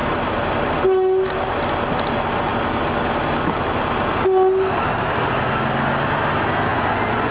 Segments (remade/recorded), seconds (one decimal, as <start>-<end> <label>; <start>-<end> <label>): 0.0-6.7 recorded; 6.7-7.3 remade